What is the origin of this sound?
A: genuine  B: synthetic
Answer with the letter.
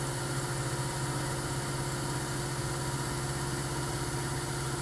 A